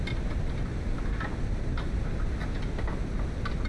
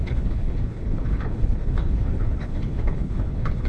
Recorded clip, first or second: first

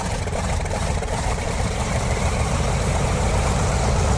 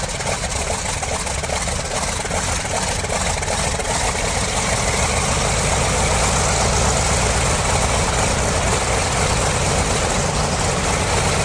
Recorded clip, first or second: second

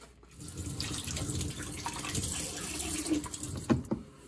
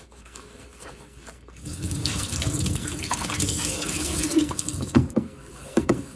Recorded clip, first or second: first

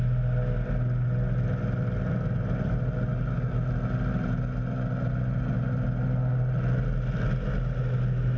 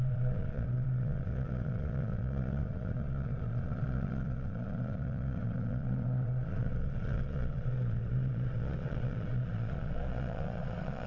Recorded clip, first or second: first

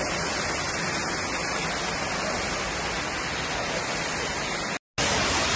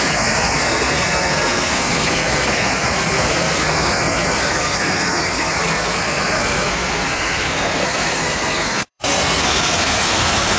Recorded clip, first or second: first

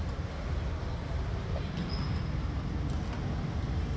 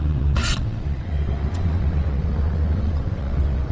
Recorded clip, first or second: first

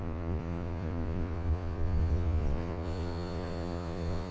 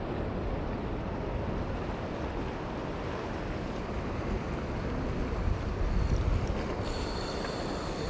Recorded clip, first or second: second